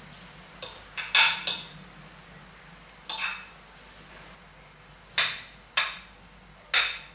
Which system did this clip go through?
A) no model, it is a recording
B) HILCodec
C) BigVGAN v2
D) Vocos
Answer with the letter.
A